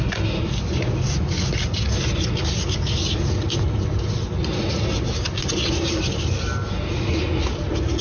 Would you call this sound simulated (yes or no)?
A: no